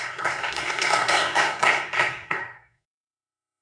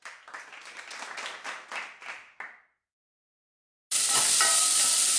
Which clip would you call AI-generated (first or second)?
first